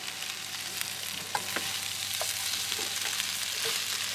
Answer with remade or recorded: recorded